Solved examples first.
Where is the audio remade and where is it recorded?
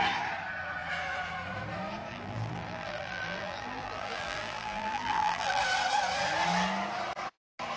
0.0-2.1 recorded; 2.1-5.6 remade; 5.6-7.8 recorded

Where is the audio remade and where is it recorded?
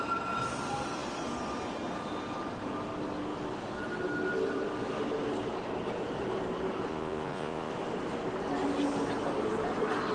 0.0-6.9 recorded; 6.9-7.7 remade; 7.7-10.1 recorded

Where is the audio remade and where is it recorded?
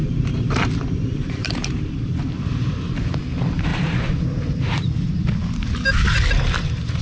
0.0-3.2 remade; 3.2-3.7 recorded; 3.7-5.2 remade; 5.2-7.0 recorded